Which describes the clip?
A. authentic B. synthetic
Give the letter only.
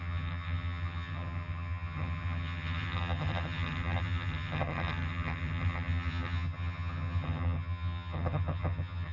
B